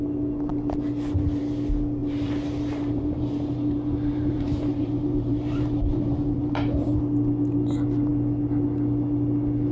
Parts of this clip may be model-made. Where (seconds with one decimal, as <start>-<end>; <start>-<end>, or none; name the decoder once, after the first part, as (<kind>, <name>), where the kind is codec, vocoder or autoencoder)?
2.0-7.0 (vocoder, BigVGAN v2)